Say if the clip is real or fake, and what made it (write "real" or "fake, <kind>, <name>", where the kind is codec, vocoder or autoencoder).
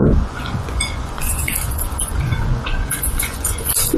fake, vocoder, Vocos